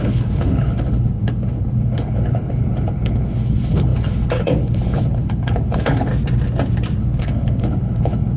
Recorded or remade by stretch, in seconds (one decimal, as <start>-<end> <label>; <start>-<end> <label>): 0.0-6.1 remade; 6.1-7.0 recorded; 7.0-8.4 remade